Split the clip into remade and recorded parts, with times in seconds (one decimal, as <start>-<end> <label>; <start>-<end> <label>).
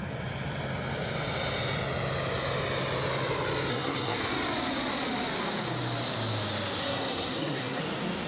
0.0-3.7 recorded; 3.7-4.2 remade; 4.2-6.8 recorded; 6.8-7.8 remade; 7.8-8.3 recorded